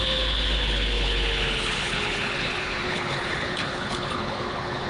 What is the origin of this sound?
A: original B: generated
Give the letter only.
B